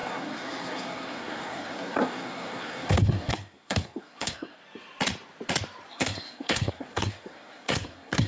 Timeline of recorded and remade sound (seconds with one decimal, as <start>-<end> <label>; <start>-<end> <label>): 0.0-4.6 remade; 4.6-5.9 recorded; 5.9-8.3 remade